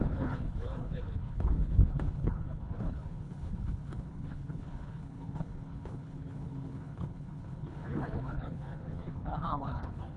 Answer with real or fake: fake